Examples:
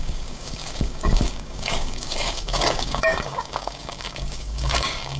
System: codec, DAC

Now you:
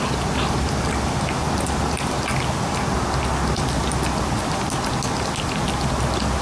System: none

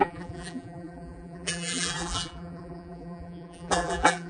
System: vocoder, BigVGAN v2